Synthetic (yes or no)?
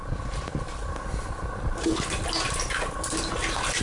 no